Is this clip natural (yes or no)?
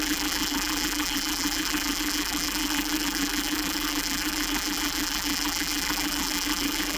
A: no